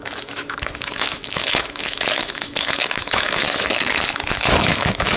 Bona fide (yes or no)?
no